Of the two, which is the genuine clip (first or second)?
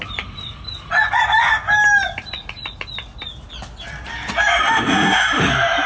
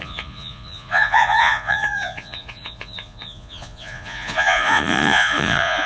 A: first